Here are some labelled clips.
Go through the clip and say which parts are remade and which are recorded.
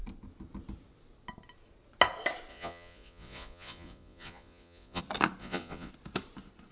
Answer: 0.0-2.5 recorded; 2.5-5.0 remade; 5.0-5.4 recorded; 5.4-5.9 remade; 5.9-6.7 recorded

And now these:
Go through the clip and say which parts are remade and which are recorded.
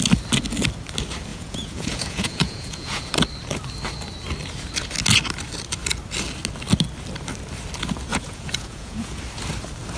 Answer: 0.0-1.3 recorded; 1.3-3.1 remade; 3.1-8.1 recorded; 8.1-9.2 remade; 9.2-10.0 recorded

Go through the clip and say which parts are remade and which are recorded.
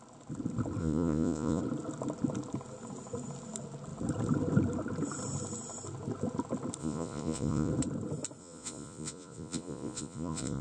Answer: 0.0-0.8 recorded; 0.8-1.6 remade; 1.6-6.8 recorded; 6.8-7.7 remade; 7.7-8.4 recorded; 8.4-10.6 remade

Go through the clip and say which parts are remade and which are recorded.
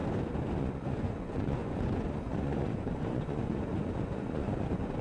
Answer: 0.0-0.6 recorded; 0.6-5.0 remade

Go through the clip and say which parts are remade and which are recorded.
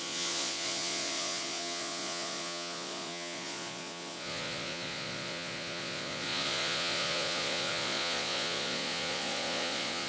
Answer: 0.0-10.1 remade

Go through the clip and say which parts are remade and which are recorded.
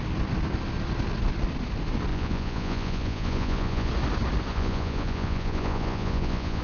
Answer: 0.0-2.1 recorded; 2.1-3.9 remade; 3.9-4.5 recorded; 4.5-6.6 remade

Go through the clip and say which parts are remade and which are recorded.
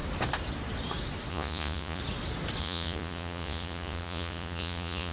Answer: 0.0-1.3 recorded; 1.3-2.0 remade; 2.0-2.6 recorded; 2.6-5.1 remade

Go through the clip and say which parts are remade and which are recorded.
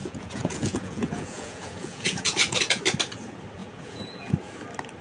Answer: 0.0-2.8 remade; 2.8-3.6 recorded; 3.6-4.3 remade; 4.3-5.0 recorded